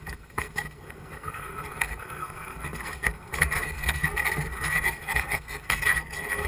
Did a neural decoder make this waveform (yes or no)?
yes